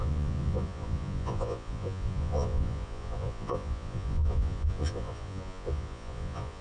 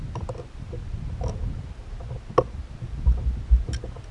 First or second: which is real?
second